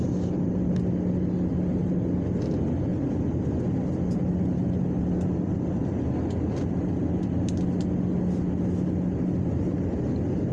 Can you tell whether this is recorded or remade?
recorded